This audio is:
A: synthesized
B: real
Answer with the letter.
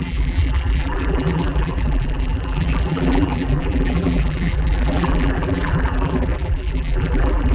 A